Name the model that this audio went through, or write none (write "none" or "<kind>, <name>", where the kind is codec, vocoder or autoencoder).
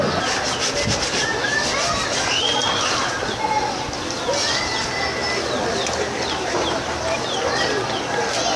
none